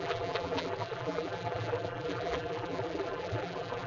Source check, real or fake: fake